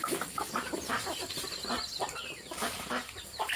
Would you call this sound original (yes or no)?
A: no